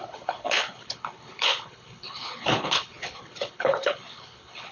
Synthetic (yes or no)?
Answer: yes